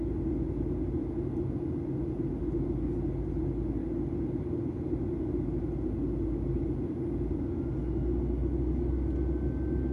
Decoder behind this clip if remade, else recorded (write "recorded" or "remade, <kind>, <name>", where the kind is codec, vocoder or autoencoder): recorded